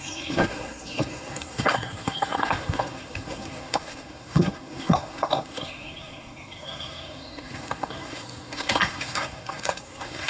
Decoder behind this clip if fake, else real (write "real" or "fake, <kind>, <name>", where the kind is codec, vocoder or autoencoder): fake, codec, SNAC